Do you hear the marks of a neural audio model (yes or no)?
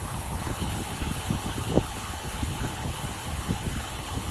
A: yes